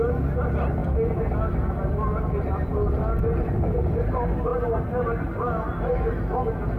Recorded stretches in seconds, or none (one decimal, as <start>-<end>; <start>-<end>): 0.0-6.8